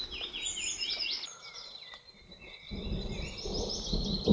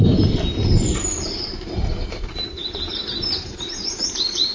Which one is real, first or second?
first